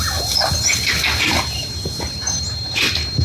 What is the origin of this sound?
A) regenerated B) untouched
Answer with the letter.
A